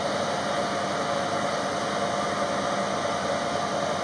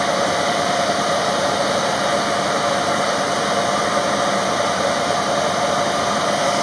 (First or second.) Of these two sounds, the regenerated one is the second